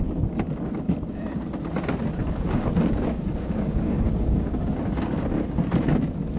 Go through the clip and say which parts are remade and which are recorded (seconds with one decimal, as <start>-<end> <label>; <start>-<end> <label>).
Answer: 0.0-2.2 recorded; 2.2-4.5 remade; 4.5-6.4 recorded